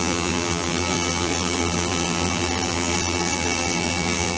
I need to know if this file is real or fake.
fake